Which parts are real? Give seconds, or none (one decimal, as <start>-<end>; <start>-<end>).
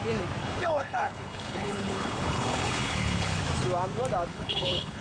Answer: 0.0-0.4; 3.4-4.3